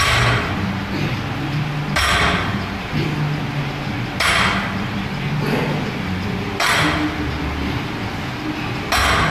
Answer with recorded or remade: recorded